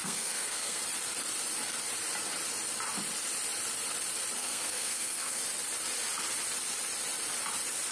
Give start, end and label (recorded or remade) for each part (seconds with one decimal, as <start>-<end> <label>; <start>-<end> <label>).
0.0-0.8 remade; 0.8-4.4 recorded; 4.4-5.4 remade; 5.4-7.9 recorded